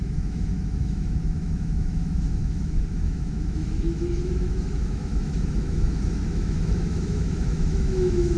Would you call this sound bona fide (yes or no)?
no